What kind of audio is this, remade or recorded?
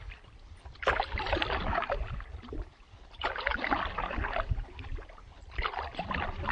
recorded